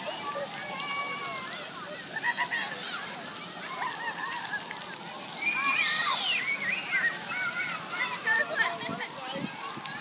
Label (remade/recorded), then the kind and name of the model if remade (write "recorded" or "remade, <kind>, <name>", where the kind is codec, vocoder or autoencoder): recorded